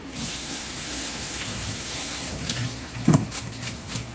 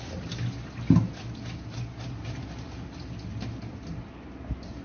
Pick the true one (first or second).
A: second